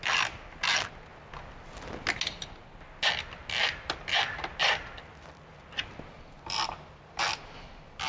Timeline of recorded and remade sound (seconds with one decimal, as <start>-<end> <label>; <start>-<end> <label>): 0.0-8.1 recorded